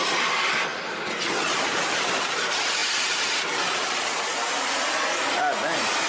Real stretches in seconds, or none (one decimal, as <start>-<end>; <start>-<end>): 4.3-4.8